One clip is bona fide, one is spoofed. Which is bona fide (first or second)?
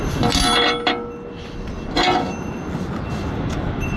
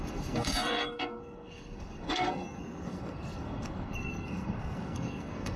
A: first